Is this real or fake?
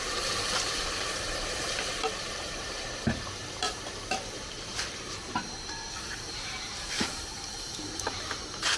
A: fake